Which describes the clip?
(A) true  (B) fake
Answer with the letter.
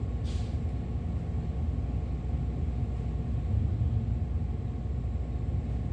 A